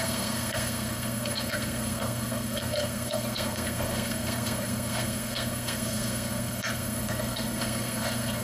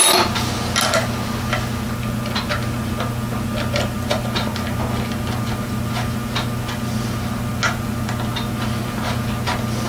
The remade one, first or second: first